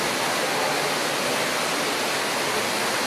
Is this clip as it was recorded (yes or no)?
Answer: yes